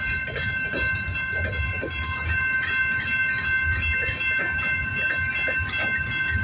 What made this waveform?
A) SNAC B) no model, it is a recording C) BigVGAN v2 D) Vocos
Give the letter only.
B